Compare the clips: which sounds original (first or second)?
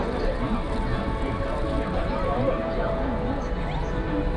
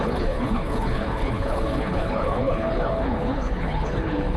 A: first